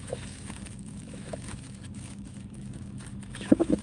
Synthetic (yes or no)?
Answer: yes